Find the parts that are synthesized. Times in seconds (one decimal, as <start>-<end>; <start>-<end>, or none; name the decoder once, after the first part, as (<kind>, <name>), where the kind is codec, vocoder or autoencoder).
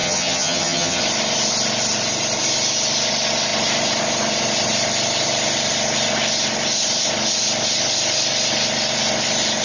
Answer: 0.0-1.0 (vocoder, HiFi-GAN)